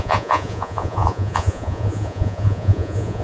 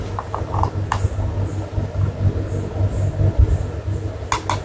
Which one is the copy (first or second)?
first